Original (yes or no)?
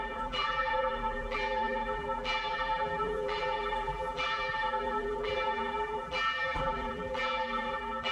no